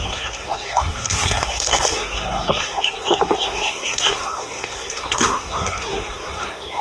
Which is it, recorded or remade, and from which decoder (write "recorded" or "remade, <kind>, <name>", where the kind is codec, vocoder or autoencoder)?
remade, codec, SNAC